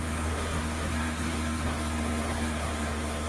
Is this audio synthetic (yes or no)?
yes